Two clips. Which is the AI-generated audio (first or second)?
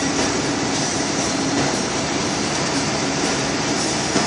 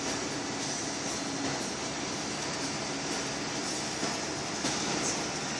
first